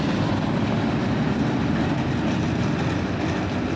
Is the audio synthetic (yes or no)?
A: no